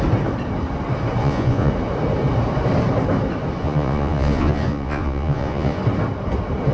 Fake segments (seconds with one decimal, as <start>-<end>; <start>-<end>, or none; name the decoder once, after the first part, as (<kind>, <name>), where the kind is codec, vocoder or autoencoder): 1.2-1.7 (vocoder, Vocos); 3.6-5.8